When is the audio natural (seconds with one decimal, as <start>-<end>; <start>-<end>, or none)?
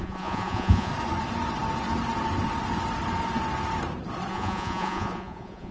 0.9-4.3